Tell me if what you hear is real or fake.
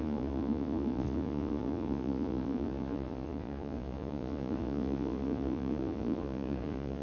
fake